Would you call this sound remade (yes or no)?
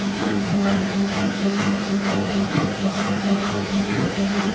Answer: yes